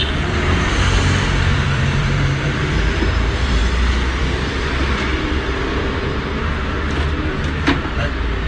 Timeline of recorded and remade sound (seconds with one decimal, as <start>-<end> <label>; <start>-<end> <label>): 0.0-3.6 remade; 3.6-4.2 recorded; 4.2-5.1 remade; 5.1-8.0 recorded; 8.0-8.5 remade